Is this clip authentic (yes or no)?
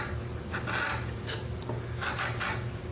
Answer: yes